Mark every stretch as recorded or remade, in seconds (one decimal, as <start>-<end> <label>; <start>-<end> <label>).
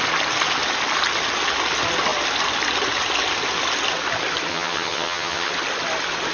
0.0-4.5 recorded; 4.5-5.5 remade; 5.5-6.3 recorded